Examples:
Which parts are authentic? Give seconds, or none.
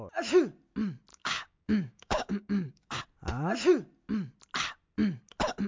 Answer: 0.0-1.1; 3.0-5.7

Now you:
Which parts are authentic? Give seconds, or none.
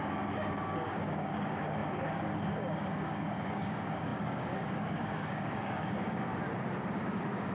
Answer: 6.3-6.9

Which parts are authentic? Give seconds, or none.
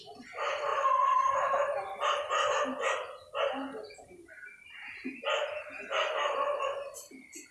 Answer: 0.0-7.5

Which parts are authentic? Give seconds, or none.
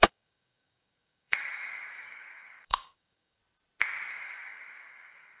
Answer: 3.4-4.1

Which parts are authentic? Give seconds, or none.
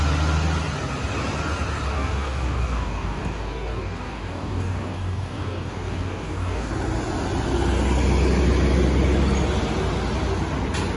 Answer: 0.0-1.9; 6.7-11.0